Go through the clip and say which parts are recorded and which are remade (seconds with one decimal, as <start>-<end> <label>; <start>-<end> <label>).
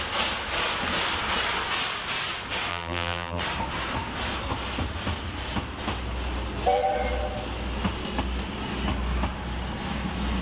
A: 0.0-2.7 recorded; 2.7-3.4 remade; 3.4-10.4 recorded